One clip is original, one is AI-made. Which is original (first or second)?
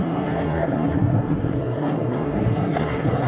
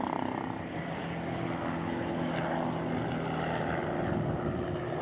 second